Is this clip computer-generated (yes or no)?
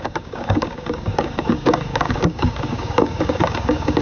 yes